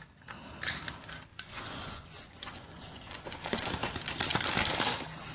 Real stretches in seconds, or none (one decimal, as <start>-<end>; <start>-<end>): 0.0-1.3; 3.7-5.3